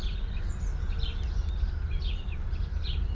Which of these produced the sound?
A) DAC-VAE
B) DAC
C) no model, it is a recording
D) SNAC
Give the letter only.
C